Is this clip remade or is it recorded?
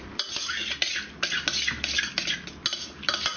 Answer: recorded